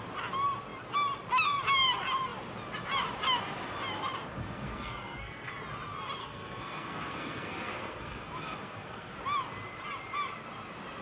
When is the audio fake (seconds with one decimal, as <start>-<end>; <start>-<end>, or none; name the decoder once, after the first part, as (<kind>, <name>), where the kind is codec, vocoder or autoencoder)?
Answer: 4.4-5.5 (codec, SNAC); 6.2-9.1